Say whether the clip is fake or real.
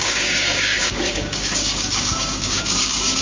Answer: fake